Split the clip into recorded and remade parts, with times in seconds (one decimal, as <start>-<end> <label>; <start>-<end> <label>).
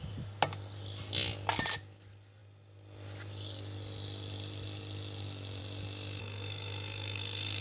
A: 0.0-6.2 recorded; 6.2-7.6 remade